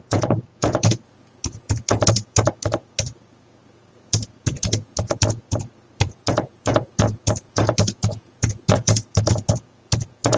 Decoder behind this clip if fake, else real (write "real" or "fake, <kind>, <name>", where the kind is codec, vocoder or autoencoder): fake, vocoder, Vocos